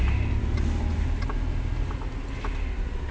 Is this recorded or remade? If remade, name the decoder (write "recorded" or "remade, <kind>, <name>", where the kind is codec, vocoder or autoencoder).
recorded